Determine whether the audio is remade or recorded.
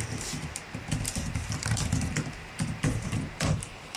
remade